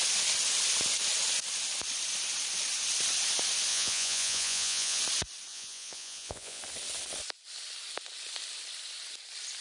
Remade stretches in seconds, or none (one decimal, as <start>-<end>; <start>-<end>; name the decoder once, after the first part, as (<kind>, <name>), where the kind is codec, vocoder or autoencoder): 3.7-5.0 (vocoder, Vocos); 5.5-6.6